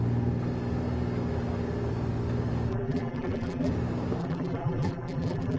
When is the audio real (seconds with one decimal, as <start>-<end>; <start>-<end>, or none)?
0.0-2.7; 3.7-4.2